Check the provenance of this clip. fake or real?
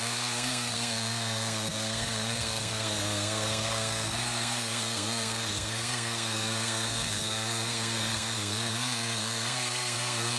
fake